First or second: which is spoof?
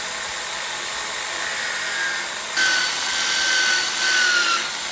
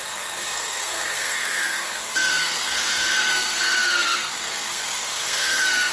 second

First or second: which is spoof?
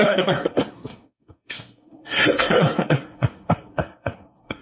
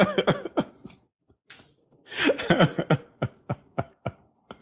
first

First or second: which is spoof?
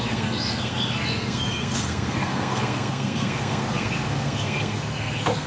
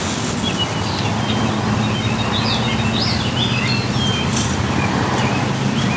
first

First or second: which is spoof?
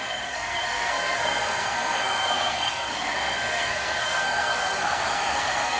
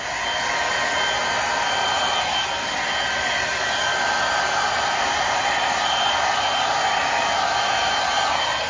first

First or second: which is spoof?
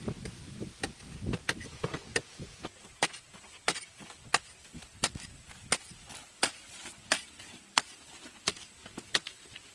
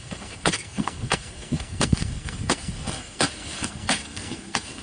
second